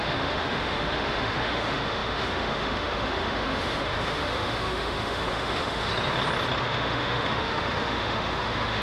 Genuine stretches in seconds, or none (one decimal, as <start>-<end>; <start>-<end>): 5.9-6.6